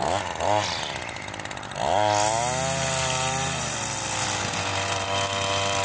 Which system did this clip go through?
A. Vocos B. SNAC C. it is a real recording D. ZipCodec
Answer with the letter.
C